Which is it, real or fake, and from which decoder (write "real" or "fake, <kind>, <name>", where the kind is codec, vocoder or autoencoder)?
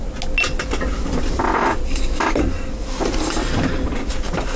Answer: real